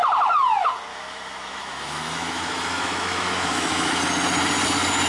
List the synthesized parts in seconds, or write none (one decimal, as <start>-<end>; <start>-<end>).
0.9-4.0